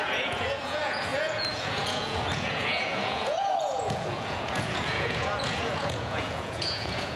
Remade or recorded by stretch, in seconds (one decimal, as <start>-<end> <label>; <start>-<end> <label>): 0.0-7.2 remade